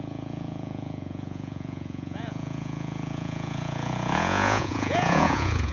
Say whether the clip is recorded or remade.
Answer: remade